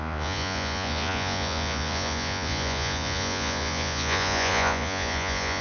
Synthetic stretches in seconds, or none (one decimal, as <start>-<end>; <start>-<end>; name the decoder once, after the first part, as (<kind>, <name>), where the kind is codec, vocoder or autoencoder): 0.0-5.6 (vocoder, Vocos)